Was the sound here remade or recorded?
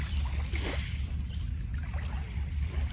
recorded